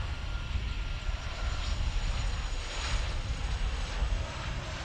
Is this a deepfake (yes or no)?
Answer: no